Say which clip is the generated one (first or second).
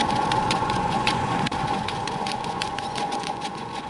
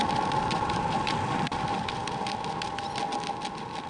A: first